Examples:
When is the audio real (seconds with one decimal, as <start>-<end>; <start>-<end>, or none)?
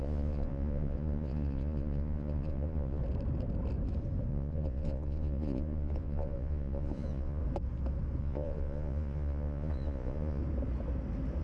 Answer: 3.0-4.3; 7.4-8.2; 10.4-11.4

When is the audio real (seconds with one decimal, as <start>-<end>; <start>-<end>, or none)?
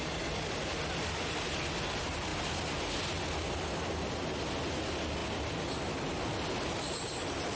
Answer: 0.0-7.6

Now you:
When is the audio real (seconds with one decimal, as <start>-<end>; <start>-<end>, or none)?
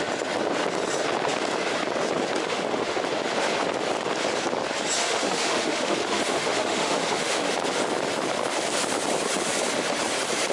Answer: 0.0-2.4; 3.0-5.0; 7.5-10.5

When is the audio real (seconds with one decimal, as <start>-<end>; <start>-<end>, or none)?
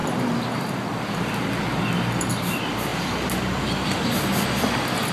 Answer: 2.9-3.6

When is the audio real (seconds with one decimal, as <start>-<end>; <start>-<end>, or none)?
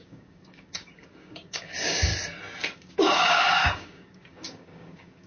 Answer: 2.1-2.9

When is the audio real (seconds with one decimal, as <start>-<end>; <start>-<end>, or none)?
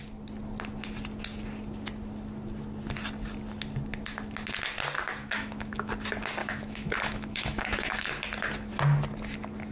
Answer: 0.0-5.2; 5.9-6.4; 8.1-9.7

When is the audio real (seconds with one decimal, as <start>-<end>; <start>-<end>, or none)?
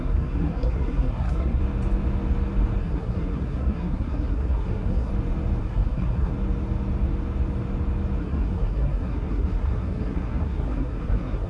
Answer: 1.6-2.8; 5.1-5.6; 6.3-8.2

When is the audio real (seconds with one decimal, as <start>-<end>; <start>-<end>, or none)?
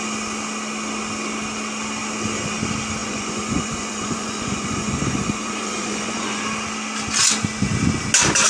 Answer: 0.0-3.0; 6.4-8.5